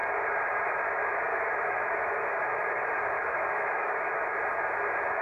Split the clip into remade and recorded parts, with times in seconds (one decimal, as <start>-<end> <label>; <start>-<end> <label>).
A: 0.0-1.3 recorded; 1.3-4.4 remade; 4.4-5.2 recorded